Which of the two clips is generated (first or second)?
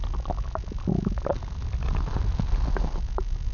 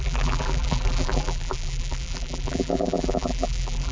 second